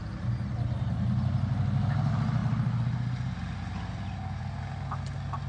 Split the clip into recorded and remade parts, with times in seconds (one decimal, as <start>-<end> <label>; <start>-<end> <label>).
0.0-5.5 recorded